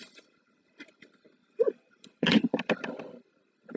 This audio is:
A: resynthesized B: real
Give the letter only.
B